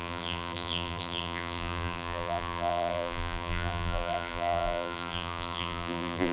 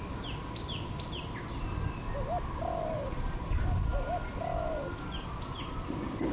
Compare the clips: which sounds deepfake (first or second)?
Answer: first